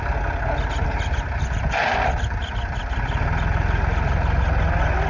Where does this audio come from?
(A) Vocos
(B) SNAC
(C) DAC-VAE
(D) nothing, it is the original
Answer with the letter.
D